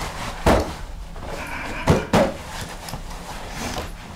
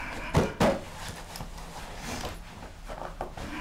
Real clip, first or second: second